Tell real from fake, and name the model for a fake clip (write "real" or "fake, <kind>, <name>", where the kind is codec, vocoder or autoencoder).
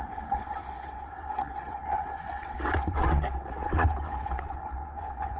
fake, vocoder, WaveNeXt